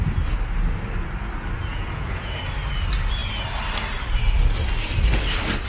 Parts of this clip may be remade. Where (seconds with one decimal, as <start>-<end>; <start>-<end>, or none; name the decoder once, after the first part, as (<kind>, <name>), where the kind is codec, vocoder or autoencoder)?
1.7-2.4 (vocoder, Vocos)